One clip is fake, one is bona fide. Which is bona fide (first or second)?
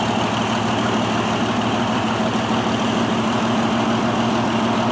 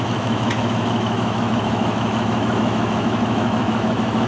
first